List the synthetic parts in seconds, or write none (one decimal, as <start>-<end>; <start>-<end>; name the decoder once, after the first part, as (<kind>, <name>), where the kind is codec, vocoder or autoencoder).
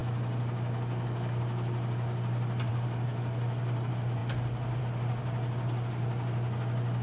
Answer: none